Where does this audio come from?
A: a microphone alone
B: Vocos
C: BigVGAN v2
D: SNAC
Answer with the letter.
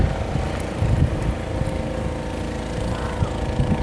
A